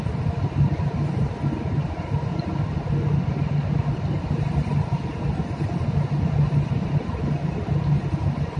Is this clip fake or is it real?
real